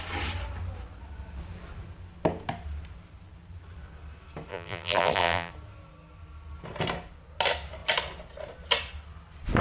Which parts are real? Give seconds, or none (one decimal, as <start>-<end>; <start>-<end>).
0.0-4.5; 5.5-9.6